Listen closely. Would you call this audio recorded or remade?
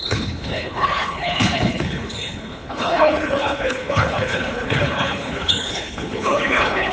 remade